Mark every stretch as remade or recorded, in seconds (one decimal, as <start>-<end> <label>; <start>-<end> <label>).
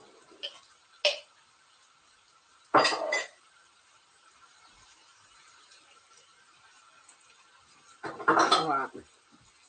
0.0-2.5 recorded; 2.5-6.8 remade; 6.8-9.7 recorded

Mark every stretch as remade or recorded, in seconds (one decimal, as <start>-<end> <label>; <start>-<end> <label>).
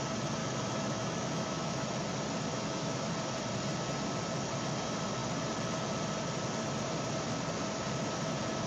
0.0-0.4 recorded; 0.4-1.9 remade; 1.9-2.5 recorded; 2.5-3.1 remade; 3.1-8.7 recorded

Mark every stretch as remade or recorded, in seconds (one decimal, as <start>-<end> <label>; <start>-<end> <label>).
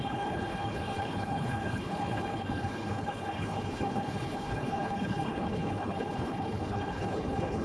0.0-7.6 remade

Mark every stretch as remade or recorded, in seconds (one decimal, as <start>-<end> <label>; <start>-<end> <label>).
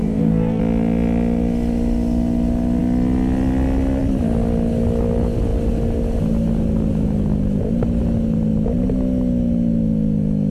0.0-0.6 remade; 0.6-10.5 recorded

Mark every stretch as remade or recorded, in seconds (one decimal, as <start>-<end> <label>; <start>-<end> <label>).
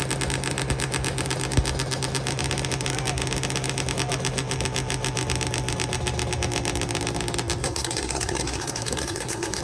0.0-7.6 recorded; 7.6-9.6 remade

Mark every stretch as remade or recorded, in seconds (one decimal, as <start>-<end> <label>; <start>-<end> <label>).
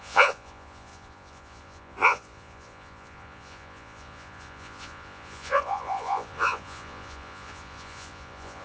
0.0-8.6 remade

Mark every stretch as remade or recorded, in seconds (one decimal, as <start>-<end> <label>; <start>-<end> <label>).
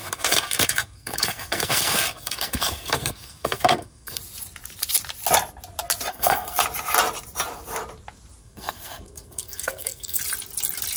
0.0-4.2 remade; 4.2-6.1 recorded; 6.1-6.6 remade; 6.6-8.4 recorded; 8.4-10.2 remade; 10.2-11.0 recorded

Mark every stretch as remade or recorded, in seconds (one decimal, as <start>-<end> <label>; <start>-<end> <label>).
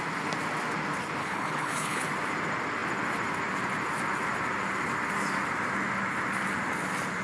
0.0-1.2 recorded; 1.2-2.1 remade; 2.1-7.2 recorded